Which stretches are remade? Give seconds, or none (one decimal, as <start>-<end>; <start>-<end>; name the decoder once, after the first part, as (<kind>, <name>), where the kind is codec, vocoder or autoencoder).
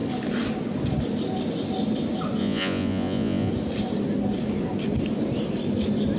2.4-3.5 (vocoder, Vocos)